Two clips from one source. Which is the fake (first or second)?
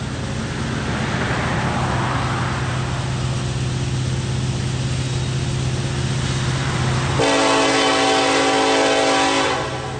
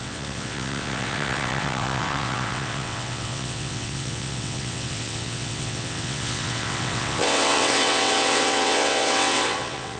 second